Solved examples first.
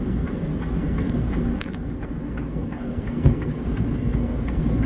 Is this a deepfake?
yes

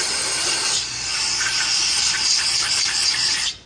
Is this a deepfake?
yes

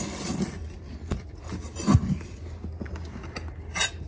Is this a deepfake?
no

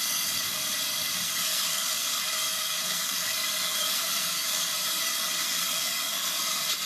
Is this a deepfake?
yes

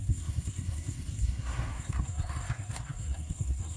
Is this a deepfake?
yes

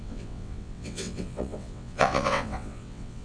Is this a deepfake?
yes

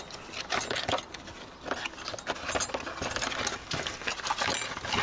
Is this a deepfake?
no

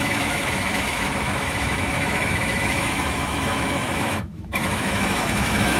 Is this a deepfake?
yes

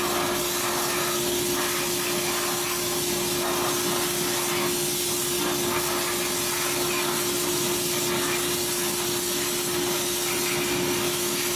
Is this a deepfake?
no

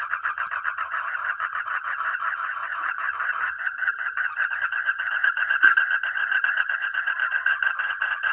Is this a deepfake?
yes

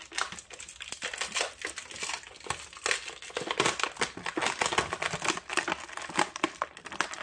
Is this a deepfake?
no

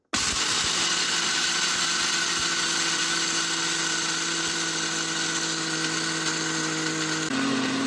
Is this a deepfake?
no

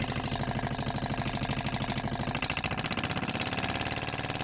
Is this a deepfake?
no